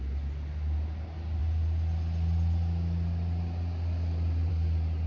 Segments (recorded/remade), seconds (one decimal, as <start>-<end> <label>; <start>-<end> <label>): 0.0-5.1 recorded